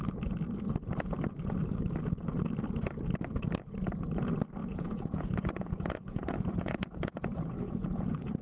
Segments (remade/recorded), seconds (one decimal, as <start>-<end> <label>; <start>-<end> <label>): 0.0-4.6 recorded; 4.6-8.4 remade